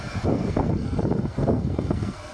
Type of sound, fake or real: fake